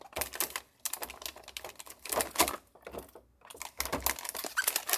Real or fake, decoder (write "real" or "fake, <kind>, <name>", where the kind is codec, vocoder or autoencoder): real